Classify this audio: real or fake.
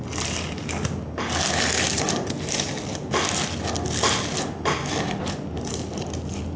real